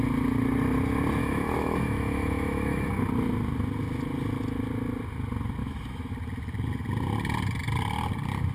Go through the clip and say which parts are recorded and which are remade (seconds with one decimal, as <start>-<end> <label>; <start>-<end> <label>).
0.0-1.2 recorded; 1.2-2.9 remade; 2.9-5.6 recorded; 5.6-6.1 remade; 6.1-8.5 recorded